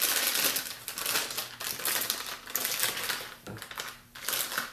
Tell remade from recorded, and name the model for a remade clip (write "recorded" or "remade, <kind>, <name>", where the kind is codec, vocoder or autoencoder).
recorded